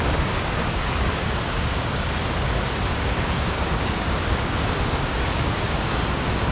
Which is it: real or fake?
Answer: fake